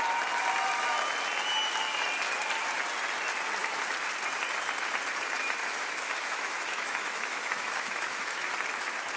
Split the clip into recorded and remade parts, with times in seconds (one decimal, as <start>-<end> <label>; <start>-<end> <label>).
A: 0.0-5.6 recorded; 5.6-8.5 remade; 8.5-9.2 recorded